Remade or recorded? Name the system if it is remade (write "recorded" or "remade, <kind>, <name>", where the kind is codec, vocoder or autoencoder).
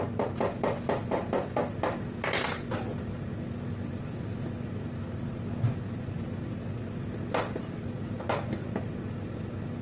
recorded